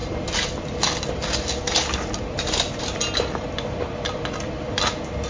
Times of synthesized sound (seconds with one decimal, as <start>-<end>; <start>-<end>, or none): none